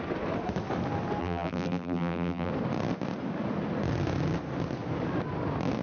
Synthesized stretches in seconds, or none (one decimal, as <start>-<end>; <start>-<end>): 1.2-2.5